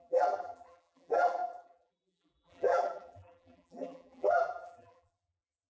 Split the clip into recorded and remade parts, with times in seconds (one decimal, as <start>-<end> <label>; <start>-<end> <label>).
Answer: 0.0-5.7 remade